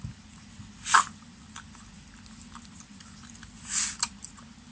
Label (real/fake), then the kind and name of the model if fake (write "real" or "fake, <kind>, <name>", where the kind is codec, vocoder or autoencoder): real